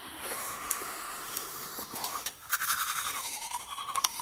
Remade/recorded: remade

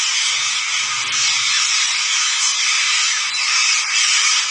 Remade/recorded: recorded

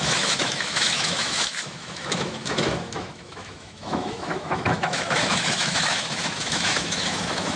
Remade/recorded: remade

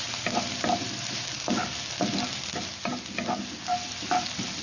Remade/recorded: recorded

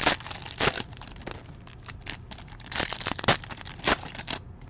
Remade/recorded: recorded